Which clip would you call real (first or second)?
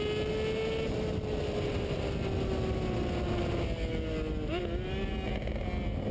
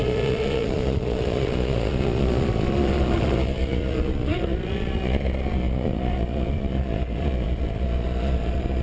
first